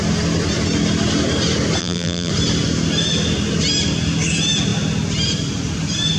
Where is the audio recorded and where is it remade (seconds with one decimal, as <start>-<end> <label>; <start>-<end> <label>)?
0.0-1.8 recorded; 1.8-2.3 remade; 2.3-6.2 recorded